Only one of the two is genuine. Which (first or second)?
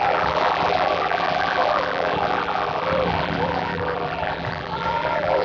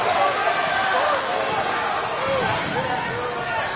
second